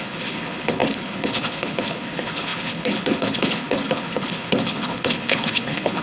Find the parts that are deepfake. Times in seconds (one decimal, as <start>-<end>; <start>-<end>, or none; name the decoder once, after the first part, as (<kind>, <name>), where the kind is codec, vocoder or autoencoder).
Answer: 0.0-6.0 (codec, HILCodec)